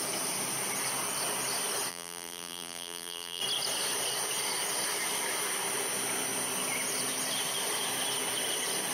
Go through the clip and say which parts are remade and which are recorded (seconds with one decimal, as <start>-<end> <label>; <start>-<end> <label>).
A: 0.0-1.9 recorded; 1.9-3.4 remade; 3.4-8.9 recorded